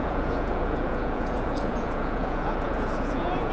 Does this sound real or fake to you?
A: fake